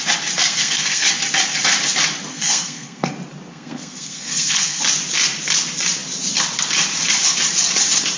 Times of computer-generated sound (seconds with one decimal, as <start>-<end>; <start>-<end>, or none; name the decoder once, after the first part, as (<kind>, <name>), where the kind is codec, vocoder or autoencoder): 0.4-1.1 (codec, SNAC); 2.3-3.1; 3.5-4.8